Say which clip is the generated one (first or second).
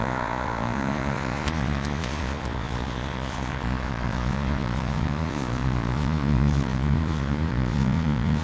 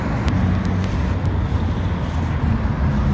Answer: first